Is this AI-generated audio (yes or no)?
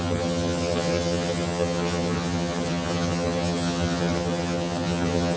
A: yes